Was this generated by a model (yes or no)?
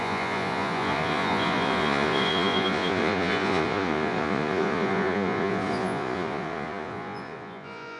yes